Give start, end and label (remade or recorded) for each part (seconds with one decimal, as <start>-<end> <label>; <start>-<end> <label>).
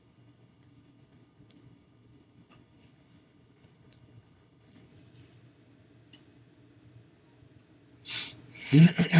0.0-4.9 remade; 4.9-8.6 recorded; 8.6-9.2 remade